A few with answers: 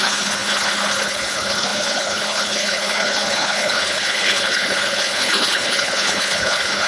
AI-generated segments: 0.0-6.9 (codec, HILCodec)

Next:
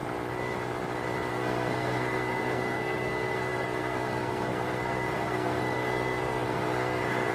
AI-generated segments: 1.3-7.3 (codec, SNAC)

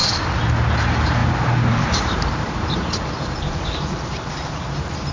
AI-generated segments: 0.7-5.1 (vocoder, BigVGAN v2)

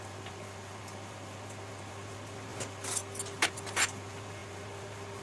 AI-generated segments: none